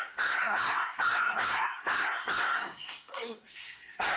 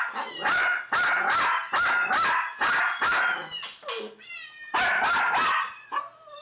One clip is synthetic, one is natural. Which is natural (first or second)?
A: second